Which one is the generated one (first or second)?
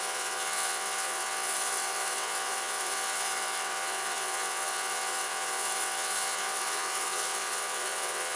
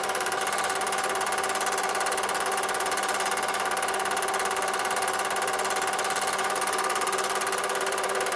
first